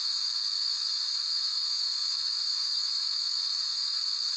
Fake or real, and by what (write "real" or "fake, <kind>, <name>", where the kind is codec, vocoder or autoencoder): fake, autoencoder, DAC-VAE